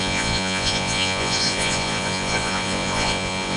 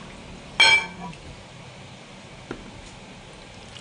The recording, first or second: second